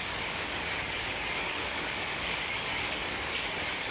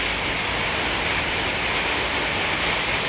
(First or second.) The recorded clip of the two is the second